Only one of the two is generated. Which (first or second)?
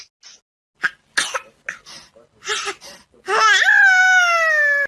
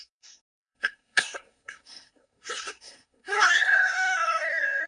second